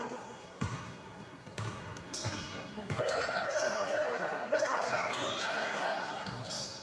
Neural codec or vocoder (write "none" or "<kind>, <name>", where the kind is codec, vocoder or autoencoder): codec, SNAC